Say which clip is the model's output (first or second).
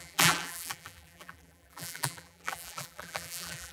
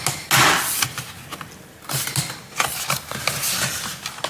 first